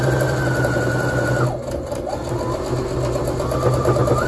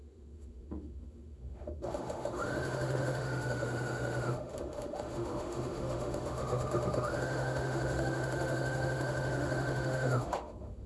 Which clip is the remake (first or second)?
second